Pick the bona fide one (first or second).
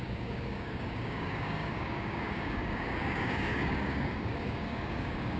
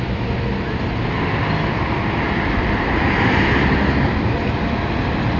second